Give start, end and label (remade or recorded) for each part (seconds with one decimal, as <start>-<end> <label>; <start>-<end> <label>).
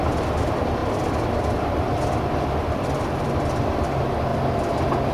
0.0-0.8 recorded; 0.8-3.9 remade; 3.9-5.1 recorded